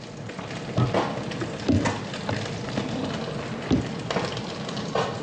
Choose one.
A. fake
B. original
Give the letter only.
B